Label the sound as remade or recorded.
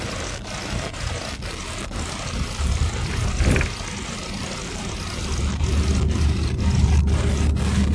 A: recorded